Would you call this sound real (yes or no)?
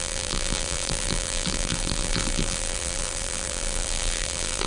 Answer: no